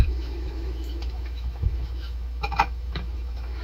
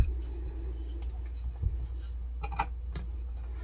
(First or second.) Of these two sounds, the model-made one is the first